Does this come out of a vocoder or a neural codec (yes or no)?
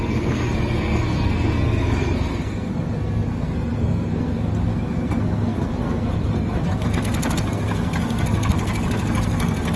yes